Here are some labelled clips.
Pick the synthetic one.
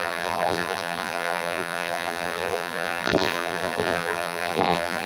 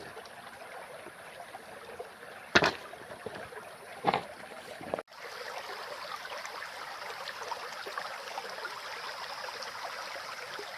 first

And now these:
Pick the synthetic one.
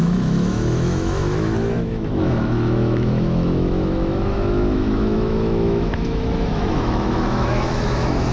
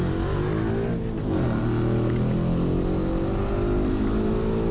first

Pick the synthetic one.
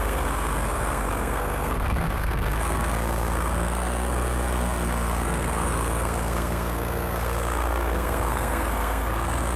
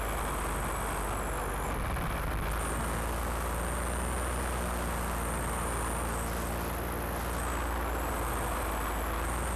first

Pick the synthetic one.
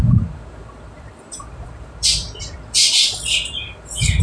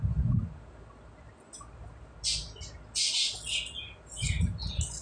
first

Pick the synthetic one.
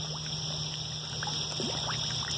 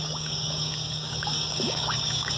second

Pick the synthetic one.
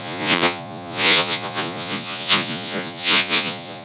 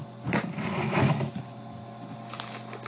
first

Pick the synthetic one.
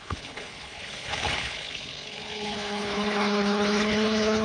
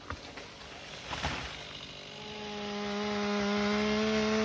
first